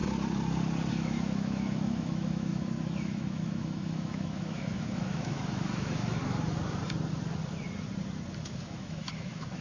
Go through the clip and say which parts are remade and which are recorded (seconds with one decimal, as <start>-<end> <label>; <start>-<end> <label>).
0.0-0.9 recorded; 0.9-6.2 remade; 6.2-8.4 recorded; 8.4-9.6 remade